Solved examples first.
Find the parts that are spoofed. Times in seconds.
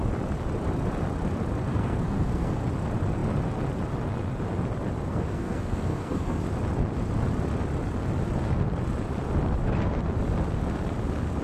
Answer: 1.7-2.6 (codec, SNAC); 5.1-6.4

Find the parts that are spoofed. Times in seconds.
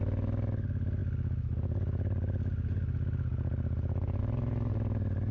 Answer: none